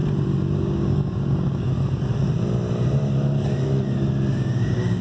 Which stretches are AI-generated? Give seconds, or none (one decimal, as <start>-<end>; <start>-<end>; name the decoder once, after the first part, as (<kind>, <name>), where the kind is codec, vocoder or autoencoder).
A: 0.6-1.7 (codec, DAC); 4.3-5.0